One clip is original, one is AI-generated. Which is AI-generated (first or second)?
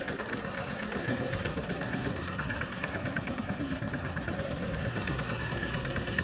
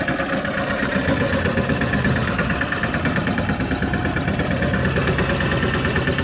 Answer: first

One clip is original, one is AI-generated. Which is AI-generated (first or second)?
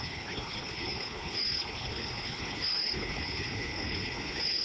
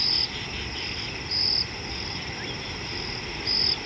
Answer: first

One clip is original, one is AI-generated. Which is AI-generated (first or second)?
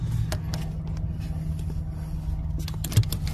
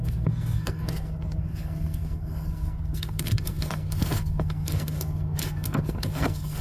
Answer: second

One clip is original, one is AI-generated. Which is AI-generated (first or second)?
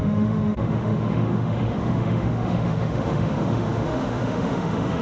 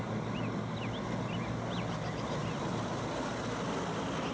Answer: first